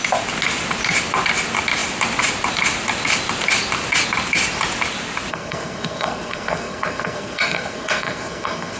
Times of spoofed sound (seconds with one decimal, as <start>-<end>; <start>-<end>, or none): 5.3-8.8